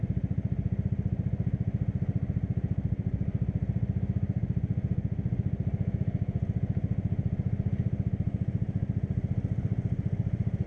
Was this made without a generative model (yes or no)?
yes